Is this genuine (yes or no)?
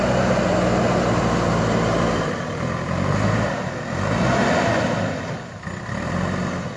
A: yes